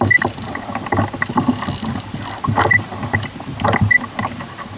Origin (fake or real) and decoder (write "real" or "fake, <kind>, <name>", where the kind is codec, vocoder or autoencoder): real